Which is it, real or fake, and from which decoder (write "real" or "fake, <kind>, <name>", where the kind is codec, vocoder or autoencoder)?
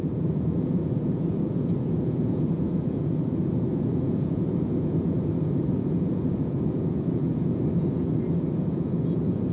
fake, vocoder, Vocos